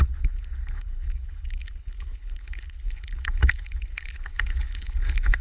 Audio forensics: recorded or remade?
remade